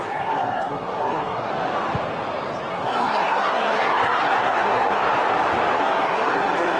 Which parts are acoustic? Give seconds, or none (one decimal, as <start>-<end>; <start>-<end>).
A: 1.5-2.7; 5.0-5.8